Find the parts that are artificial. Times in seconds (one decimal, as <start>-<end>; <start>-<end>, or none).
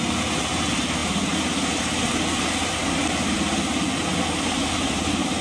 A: none